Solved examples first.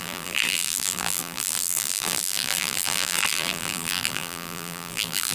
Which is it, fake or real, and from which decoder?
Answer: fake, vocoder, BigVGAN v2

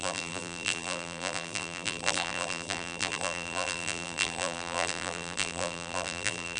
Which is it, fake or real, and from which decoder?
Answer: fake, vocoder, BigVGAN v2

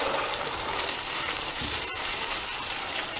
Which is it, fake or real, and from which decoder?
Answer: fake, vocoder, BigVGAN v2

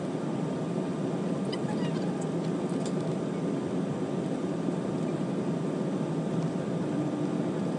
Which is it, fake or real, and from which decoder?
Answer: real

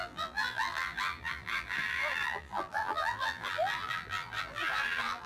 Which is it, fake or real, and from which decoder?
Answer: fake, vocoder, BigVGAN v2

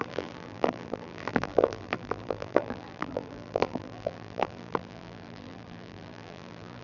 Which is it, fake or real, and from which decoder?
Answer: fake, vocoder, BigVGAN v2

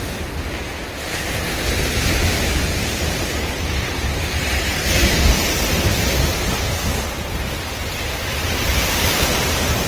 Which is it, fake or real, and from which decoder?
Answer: real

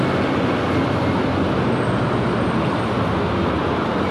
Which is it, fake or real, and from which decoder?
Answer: real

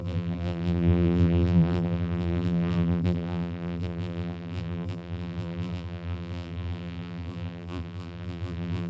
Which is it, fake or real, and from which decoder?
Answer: fake, vocoder, BigVGAN v2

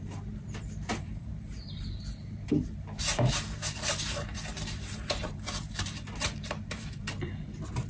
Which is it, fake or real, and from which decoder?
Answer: fake, vocoder, BigVGAN v2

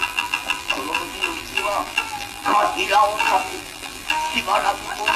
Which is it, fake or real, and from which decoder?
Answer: fake, vocoder, BigVGAN v2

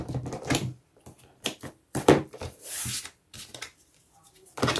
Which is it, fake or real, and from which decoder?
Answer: fake, vocoder, BigVGAN v2